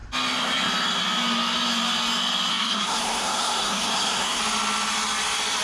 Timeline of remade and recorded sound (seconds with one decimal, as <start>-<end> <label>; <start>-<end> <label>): 0.0-2.5 recorded; 2.5-4.4 remade; 4.4-5.6 recorded